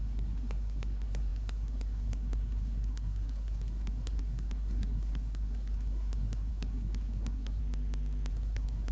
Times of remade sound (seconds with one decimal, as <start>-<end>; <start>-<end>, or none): 0.0-7.6; 8.3-8.9